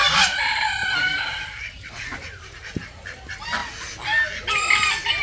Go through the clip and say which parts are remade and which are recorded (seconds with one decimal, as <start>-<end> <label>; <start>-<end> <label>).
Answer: 0.0-3.0 remade; 3.0-5.2 recorded